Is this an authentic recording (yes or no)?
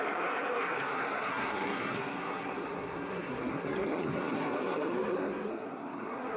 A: no